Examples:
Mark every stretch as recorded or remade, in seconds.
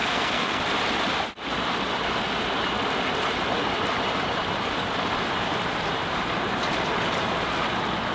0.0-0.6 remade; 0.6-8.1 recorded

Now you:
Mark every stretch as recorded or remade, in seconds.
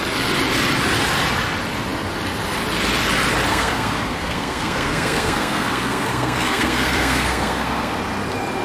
0.0-3.5 recorded; 3.5-8.0 remade; 8.0-8.6 recorded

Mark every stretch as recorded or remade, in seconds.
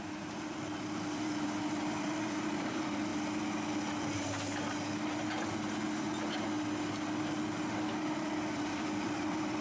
0.0-3.1 remade; 3.1-8.2 recorded; 8.2-9.6 remade